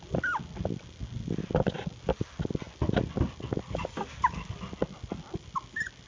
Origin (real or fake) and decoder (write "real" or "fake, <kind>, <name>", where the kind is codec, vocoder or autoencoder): real